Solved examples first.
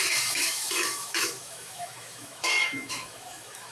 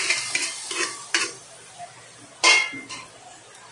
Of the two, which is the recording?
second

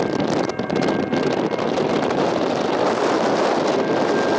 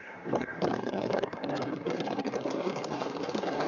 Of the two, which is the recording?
first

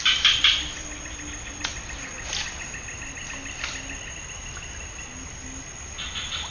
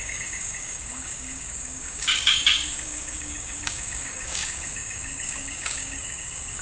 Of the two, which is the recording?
first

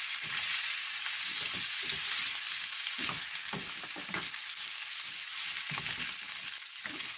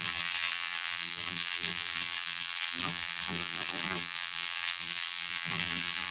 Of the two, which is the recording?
first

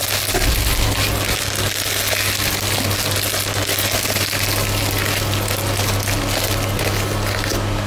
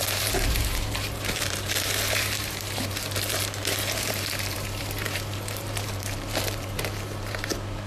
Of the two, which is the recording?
first